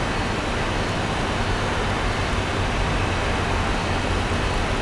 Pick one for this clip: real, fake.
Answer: real